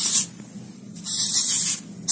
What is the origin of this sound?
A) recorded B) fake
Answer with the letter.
A